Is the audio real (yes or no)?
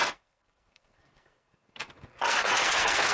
no